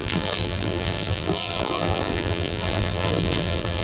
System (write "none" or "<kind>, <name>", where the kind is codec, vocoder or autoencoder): vocoder, BigVGAN v2